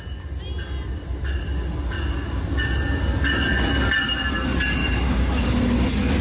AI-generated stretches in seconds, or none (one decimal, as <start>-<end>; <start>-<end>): 4.8-5.5